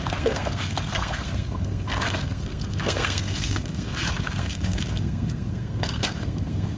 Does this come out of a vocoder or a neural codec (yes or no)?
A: yes